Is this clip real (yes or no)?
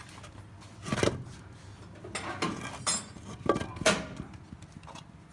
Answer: yes